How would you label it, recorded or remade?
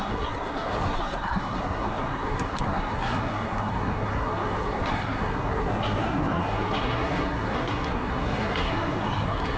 remade